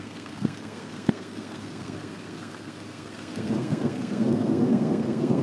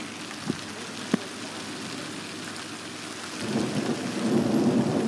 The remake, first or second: first